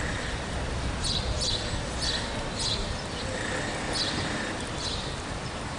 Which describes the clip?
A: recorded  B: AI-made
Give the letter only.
A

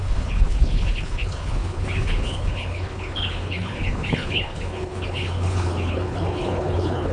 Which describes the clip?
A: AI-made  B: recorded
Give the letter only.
A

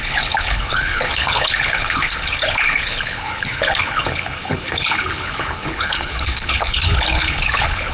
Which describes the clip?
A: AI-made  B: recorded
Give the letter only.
A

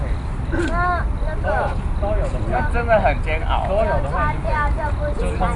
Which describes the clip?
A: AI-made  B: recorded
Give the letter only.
B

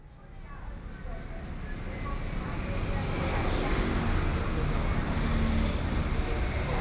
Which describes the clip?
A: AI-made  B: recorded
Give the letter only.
B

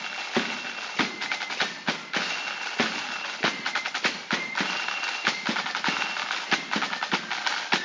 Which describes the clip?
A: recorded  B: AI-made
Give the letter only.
A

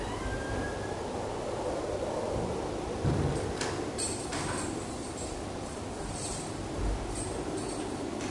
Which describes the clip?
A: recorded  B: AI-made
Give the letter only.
A